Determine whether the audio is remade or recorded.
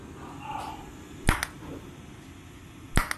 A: recorded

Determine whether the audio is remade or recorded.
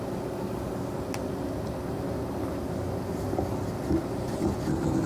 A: recorded